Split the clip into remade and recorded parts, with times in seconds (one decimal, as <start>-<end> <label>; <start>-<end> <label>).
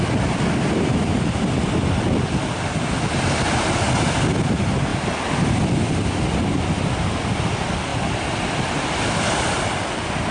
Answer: 0.0-10.3 recorded